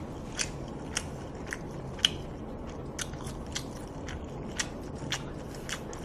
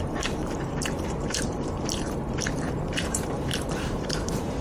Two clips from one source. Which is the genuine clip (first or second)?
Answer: first